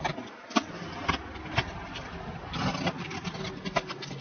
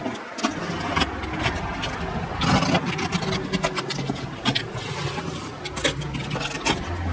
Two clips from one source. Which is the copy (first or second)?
first